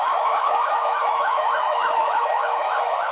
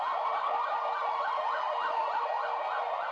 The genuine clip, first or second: second